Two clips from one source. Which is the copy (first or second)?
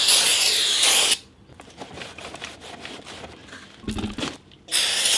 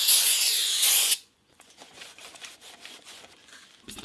second